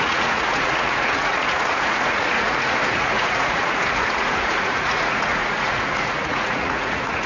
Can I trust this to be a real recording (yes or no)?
no